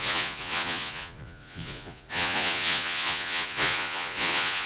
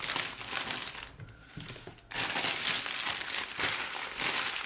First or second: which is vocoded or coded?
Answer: first